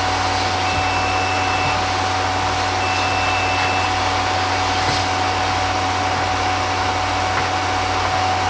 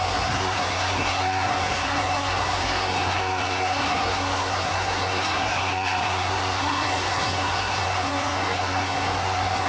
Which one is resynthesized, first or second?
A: second